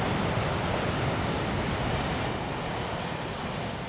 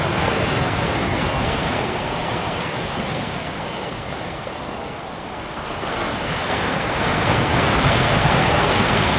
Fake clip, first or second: second